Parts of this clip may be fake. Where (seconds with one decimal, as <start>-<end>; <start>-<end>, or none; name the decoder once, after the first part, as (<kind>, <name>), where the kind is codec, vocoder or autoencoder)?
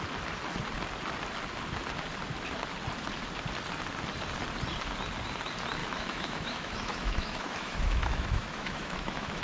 5.8-9.4 (autoencoder, DAC-VAE)